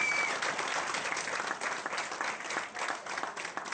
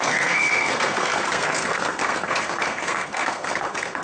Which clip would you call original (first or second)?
first